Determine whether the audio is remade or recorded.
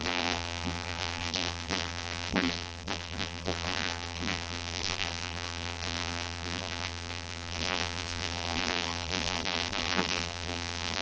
remade